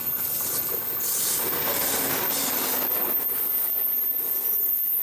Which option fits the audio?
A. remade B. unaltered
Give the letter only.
B